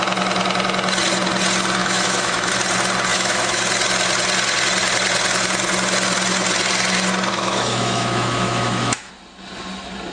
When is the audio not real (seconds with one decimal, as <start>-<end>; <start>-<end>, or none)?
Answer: 1.8-2.5; 3.1-3.6; 7.3-9.1